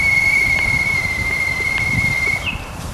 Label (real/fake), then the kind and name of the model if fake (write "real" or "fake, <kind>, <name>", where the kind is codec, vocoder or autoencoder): fake, vocoder, BigVGAN v2